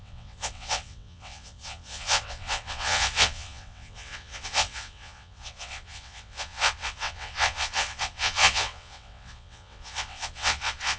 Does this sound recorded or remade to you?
remade